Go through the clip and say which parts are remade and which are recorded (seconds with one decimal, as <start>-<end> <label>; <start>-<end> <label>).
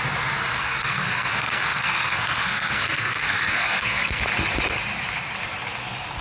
0.0-0.5 recorded; 0.5-4.2 remade; 4.2-6.2 recorded